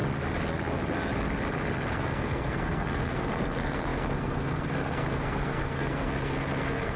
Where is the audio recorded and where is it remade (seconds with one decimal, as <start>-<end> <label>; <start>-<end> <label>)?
0.0-1.9 recorded; 1.9-7.0 remade